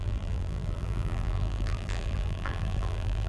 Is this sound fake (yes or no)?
yes